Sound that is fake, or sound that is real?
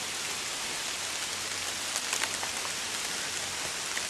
real